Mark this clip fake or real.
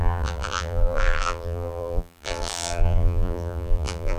fake